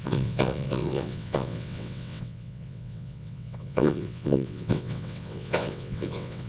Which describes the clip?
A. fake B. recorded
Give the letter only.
A